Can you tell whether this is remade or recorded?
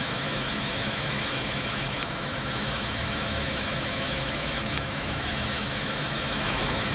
remade